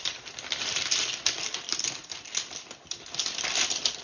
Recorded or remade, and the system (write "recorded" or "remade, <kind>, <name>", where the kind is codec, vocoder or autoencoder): remade, vocoder, BigVGAN v2